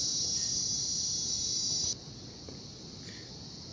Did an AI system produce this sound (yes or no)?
no